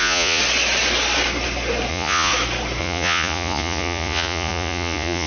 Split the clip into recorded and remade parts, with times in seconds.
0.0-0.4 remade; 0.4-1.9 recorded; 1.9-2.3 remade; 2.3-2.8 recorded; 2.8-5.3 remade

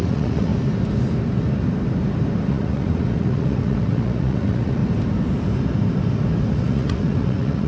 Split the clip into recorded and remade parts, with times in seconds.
0.0-0.5 remade; 0.5-2.5 recorded; 2.5-4.8 remade; 4.8-6.5 recorded; 6.5-7.7 remade

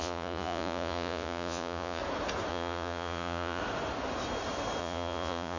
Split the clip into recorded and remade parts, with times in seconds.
0.0-2.0 remade; 2.0-2.5 recorded; 2.5-3.6 remade; 3.6-4.8 recorded; 4.8-5.6 remade

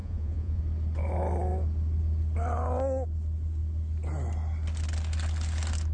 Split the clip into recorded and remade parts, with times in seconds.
0.0-0.6 remade; 0.6-5.9 recorded

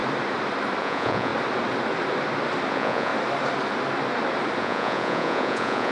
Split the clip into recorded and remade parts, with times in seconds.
0.0-0.8 recorded; 0.8-1.3 remade; 1.3-2.7 recorded; 2.7-3.1 remade; 3.1-4.6 recorded; 4.6-5.9 remade

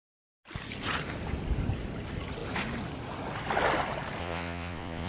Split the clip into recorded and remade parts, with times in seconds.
0.0-4.2 recorded; 4.2-5.1 remade

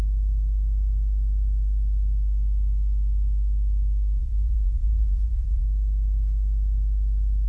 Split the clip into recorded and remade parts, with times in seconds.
0.0-4.2 recorded; 4.2-5.6 remade; 5.6-7.5 recorded

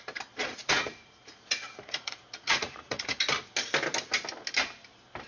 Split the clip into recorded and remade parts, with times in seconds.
0.0-0.5 recorded; 0.5-3.2 remade; 3.2-5.3 recorded